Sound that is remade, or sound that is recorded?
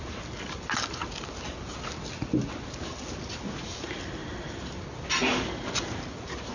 recorded